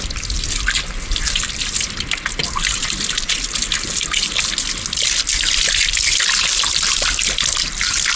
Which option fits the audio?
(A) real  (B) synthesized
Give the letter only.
A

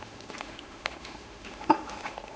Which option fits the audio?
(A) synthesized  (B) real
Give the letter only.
A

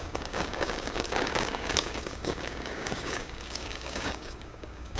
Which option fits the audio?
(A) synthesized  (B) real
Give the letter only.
A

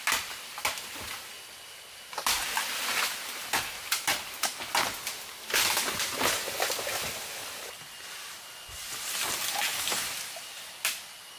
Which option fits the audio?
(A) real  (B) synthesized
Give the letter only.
A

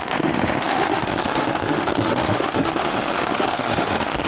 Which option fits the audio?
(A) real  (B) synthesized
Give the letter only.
B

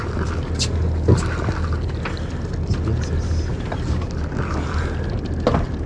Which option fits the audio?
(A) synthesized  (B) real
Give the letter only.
B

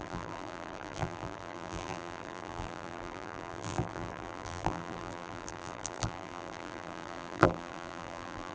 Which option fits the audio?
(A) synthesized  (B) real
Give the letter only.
A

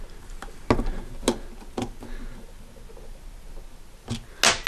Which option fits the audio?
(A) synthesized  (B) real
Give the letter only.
B